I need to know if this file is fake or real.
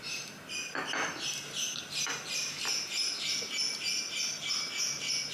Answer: real